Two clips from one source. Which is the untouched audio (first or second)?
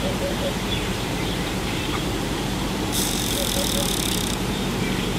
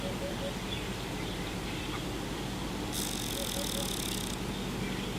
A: second